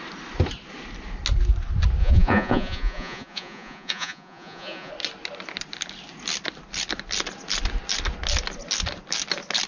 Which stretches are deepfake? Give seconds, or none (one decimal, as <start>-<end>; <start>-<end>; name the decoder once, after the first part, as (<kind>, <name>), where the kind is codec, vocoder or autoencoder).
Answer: 2.0-4.9 (vocoder, Vocos)